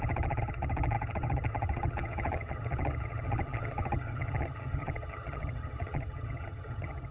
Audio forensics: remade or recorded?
remade